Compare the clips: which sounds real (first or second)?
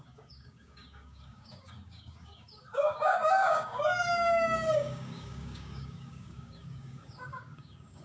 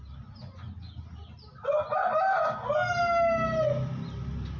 second